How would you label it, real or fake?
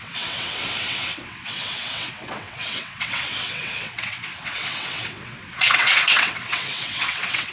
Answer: fake